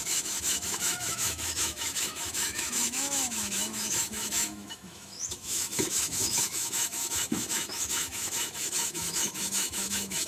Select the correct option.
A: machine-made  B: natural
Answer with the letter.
A